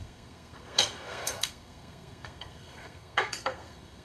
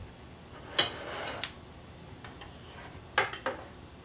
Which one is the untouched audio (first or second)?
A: second